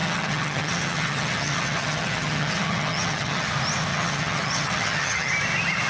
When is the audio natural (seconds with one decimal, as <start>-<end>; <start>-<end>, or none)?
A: 3.5-3.9; 5.3-5.9